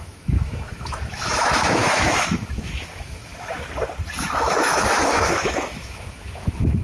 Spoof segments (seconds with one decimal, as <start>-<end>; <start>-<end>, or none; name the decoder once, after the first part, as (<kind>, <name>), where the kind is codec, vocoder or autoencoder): 0.0-3.3 (autoencoder, DAC-VAE); 4.2-6.8

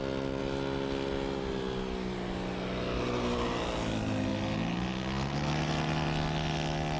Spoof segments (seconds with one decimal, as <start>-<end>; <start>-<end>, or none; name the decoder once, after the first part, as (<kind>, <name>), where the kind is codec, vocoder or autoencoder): none

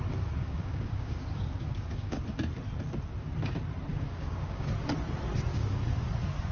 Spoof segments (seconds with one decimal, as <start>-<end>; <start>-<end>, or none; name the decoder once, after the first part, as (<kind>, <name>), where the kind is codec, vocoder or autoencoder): 0.4-2.2 (codec, DAC); 3.9-4.7; 5.5-6.1

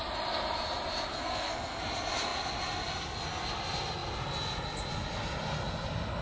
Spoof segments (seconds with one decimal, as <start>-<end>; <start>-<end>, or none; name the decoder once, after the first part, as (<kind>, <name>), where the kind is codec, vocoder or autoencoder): 1.1-1.8 (codec, SNAC)

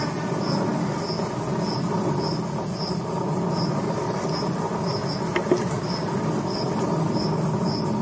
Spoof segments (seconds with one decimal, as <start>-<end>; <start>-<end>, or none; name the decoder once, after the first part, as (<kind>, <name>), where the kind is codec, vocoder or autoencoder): none

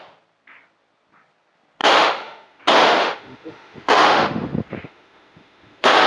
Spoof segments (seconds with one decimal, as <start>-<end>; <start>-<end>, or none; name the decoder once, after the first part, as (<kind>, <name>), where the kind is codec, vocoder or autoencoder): 1.8-2.6 (autoencoder, DAC-VAE); 3.0-6.1